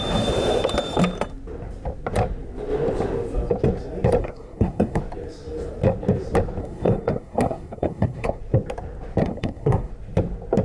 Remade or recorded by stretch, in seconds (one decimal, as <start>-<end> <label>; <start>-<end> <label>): 0.0-4.2 recorded; 4.2-5.0 remade; 5.0-6.6 recorded; 6.6-8.4 remade; 8.4-9.2 recorded; 9.2-9.9 remade; 9.9-10.6 recorded